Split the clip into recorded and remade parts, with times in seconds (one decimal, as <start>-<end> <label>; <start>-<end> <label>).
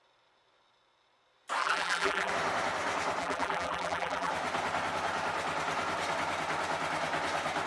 0.0-1.6 recorded; 1.6-2.3 remade; 2.3-3.2 recorded; 3.2-4.3 remade; 4.3-7.7 recorded